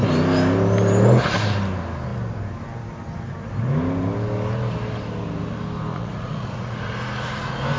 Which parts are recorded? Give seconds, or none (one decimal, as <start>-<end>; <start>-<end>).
0.0-5.9; 6.9-7.8